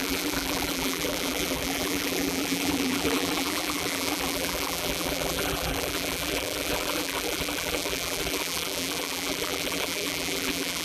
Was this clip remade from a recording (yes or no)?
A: yes